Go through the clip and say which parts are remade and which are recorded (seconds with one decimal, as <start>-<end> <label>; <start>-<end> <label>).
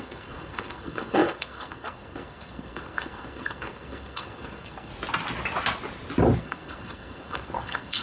0.0-4.9 remade; 4.9-6.4 recorded; 6.4-8.0 remade